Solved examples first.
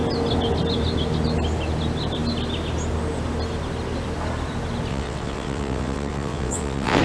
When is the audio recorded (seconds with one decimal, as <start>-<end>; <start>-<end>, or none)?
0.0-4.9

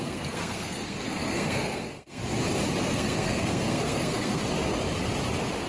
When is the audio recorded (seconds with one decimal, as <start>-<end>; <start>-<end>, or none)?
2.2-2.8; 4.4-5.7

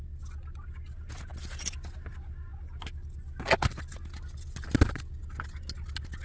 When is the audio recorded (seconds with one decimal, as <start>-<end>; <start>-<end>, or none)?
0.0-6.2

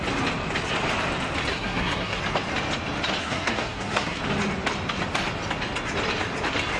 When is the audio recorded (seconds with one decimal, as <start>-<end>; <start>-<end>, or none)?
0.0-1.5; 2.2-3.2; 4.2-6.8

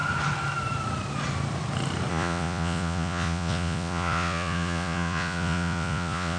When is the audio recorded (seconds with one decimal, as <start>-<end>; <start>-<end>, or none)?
0.0-2.1

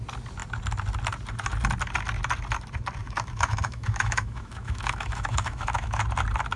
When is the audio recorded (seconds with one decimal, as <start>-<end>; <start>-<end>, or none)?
0.0-3.0; 6.0-6.6

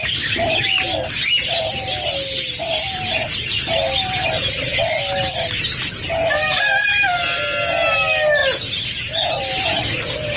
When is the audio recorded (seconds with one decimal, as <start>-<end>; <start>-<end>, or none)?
0.0-10.4